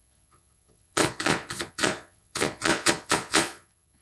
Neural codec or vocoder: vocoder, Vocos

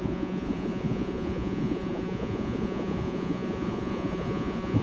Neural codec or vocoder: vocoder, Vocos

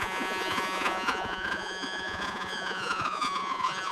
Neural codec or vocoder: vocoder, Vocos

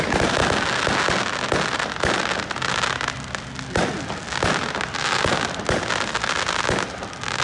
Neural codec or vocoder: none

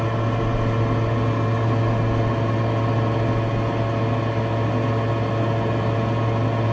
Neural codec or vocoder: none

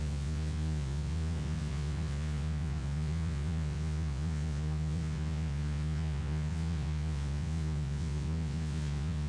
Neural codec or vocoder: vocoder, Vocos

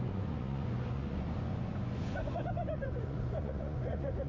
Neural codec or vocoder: vocoder, Vocos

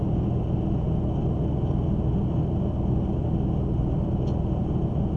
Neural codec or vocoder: none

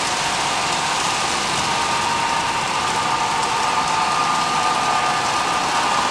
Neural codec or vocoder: none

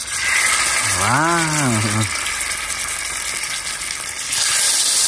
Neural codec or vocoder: none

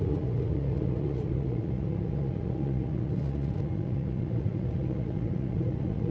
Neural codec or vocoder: vocoder, Vocos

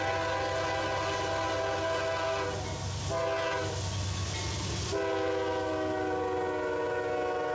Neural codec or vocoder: none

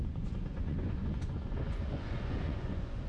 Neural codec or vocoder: vocoder, Vocos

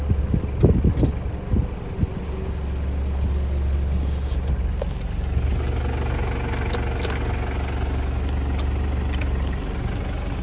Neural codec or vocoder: none